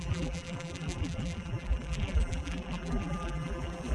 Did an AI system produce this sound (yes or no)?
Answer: yes